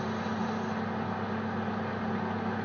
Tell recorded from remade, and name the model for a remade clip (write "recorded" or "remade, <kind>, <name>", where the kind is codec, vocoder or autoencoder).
recorded